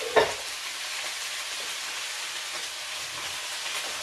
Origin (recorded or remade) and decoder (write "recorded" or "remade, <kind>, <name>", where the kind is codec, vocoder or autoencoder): recorded